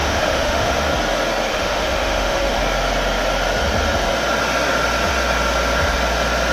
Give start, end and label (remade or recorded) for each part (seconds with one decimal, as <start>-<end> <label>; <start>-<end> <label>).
0.0-0.8 remade; 0.8-1.5 recorded; 1.5-2.6 remade; 2.6-6.5 recorded